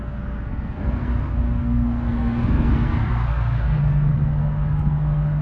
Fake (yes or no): yes